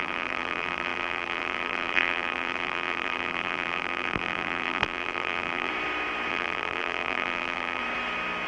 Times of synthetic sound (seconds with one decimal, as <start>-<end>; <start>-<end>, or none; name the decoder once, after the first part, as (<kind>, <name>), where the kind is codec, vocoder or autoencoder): 0.0-5.7 (vocoder, BigVGAN v2); 6.3-7.8